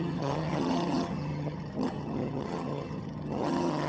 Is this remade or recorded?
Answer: remade